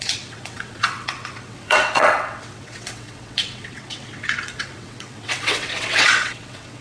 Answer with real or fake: fake